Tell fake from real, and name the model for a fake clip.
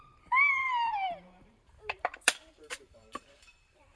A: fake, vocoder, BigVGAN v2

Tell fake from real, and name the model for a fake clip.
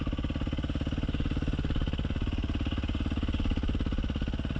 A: real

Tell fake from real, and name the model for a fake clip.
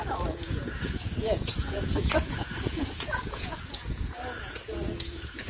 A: fake, vocoder, Vocos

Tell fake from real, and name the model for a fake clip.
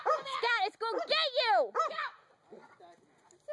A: real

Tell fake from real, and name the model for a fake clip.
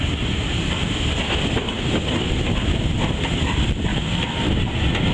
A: real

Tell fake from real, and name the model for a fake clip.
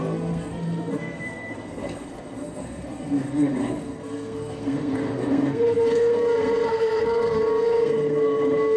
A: fake, codec, SNAC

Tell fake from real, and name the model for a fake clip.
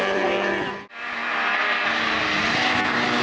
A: real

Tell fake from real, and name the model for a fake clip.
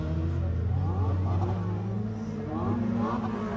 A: real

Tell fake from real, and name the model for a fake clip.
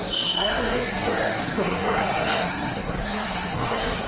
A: fake, codec, SNAC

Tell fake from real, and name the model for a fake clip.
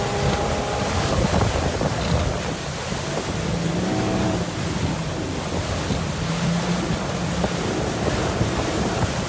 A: real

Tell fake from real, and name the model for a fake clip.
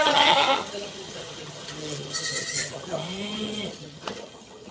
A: fake, vocoder, HiFi-GAN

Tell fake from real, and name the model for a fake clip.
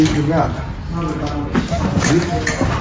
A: real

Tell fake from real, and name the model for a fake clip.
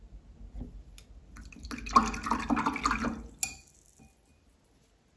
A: real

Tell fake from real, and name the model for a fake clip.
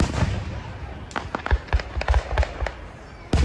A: real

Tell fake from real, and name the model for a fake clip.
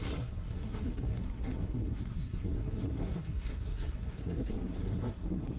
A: fake, codec, SNAC